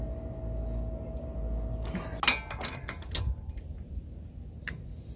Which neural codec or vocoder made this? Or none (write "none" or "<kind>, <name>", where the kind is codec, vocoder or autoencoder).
none